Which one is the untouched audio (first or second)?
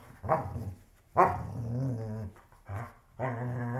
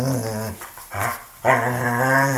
first